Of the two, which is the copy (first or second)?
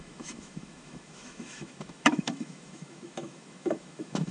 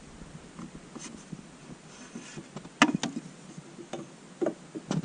first